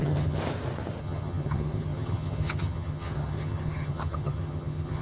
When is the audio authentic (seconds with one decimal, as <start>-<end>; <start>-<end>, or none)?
0.4-1.0